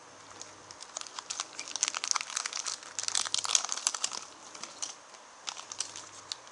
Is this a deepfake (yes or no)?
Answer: no